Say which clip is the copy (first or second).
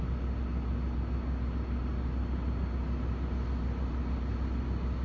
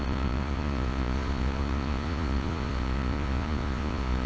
second